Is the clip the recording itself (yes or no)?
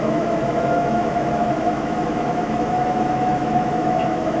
no